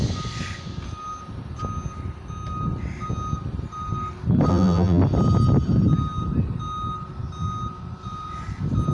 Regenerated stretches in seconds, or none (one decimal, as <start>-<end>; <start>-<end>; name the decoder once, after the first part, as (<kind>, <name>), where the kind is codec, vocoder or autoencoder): 4.5-5.0 (vocoder, BigVGAN v2)